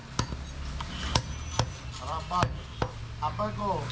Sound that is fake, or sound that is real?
real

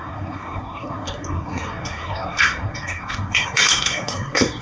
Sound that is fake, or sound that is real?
fake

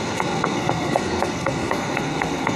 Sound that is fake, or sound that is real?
fake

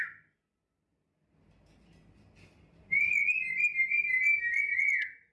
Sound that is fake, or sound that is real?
real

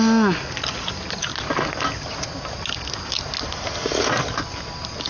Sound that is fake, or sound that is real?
real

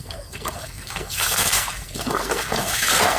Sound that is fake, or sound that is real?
fake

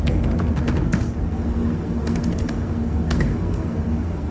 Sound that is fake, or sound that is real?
fake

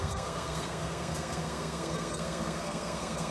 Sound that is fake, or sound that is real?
fake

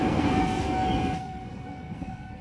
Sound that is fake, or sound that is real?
fake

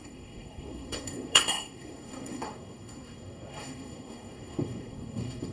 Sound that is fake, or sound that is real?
fake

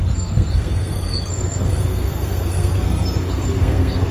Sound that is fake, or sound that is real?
fake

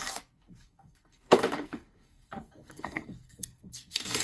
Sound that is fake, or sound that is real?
fake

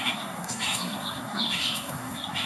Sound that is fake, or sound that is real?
fake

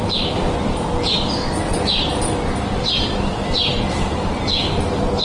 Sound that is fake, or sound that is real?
real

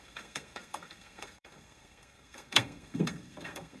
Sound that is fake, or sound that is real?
fake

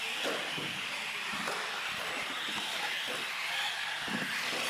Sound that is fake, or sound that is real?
real